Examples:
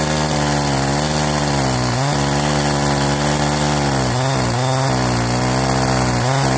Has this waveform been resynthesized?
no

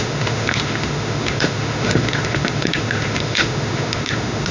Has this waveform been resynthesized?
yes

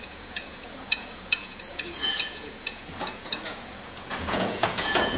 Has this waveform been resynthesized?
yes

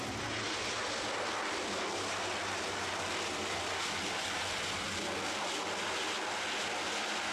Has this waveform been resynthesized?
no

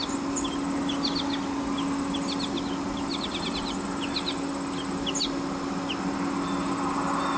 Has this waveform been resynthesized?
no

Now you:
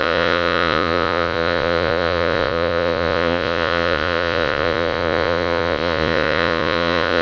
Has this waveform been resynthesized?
yes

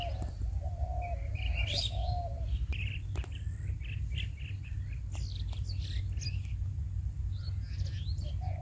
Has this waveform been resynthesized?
no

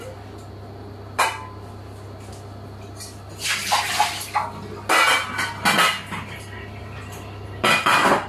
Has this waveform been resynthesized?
no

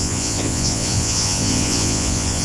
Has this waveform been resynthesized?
yes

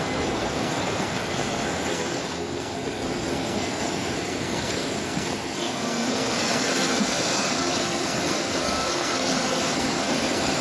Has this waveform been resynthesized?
yes